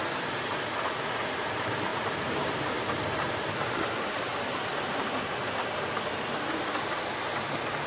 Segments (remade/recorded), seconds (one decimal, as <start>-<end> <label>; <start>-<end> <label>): 0.0-1.9 recorded; 1.9-2.5 remade; 2.5-7.9 recorded